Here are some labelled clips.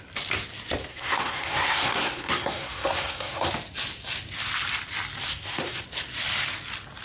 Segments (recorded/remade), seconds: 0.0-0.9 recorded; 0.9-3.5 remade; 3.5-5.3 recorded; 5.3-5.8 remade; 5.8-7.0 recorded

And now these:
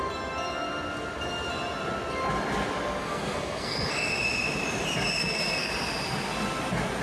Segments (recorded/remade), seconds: 0.0-3.0 recorded; 3.0-4.1 remade; 4.1-5.2 recorded; 5.2-5.7 remade; 5.7-7.0 recorded